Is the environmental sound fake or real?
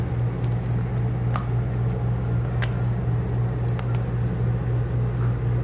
real